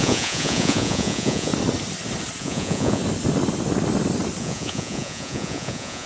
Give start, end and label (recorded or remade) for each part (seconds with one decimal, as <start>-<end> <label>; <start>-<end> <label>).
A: 0.0-1.5 remade; 1.5-2.4 recorded; 2.4-3.0 remade; 3.0-4.4 recorded; 4.4-6.1 remade